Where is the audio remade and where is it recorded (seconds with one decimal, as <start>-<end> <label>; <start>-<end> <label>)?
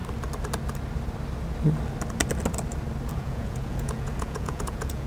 0.0-3.1 recorded; 3.1-5.1 remade